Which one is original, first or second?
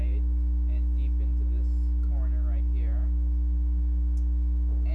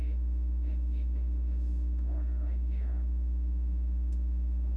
first